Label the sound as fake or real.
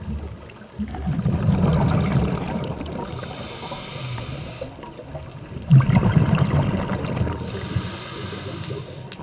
real